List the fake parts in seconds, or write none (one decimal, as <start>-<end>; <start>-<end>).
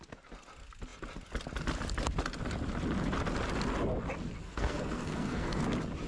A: 4.4-5.6